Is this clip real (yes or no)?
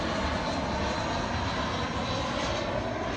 yes